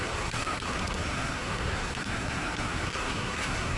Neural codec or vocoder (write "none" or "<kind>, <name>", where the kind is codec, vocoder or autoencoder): codec, SNAC